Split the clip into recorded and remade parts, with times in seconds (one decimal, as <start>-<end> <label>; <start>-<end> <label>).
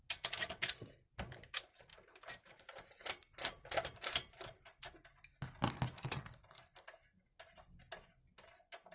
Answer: 0.0-1.9 recorded; 1.9-4.9 remade; 4.9-8.9 recorded